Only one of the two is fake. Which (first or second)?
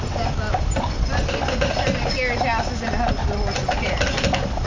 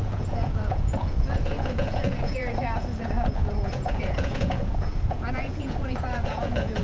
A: second